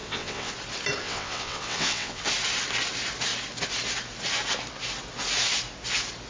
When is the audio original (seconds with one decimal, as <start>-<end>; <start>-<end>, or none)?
0.5-1.0; 2.2-6.3